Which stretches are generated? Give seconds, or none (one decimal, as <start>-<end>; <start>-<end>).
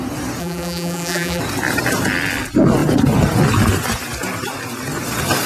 0.4-1.4